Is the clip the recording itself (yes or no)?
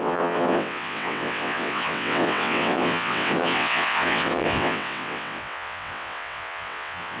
no